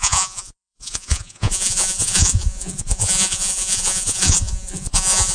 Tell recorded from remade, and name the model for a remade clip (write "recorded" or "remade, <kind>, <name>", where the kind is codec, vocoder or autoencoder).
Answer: remade, vocoder, Vocos